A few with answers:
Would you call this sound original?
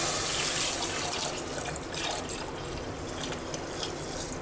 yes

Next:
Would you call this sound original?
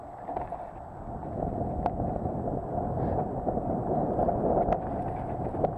yes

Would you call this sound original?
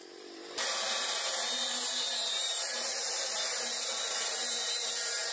no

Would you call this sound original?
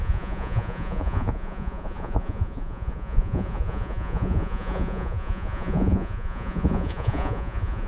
no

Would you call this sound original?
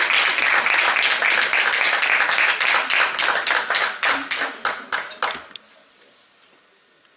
yes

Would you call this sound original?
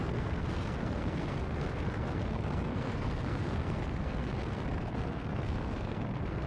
no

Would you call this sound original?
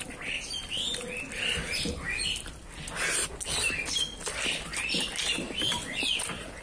yes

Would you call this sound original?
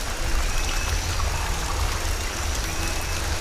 yes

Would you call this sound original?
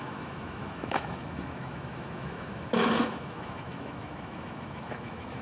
no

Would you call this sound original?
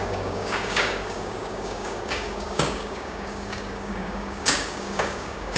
no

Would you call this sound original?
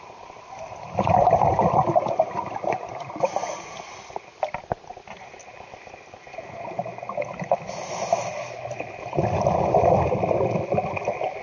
yes